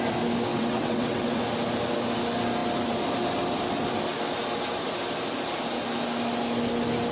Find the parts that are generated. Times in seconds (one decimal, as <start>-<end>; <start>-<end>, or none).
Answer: 0.5-1.4